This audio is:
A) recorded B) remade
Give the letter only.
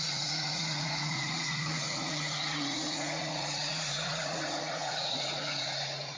B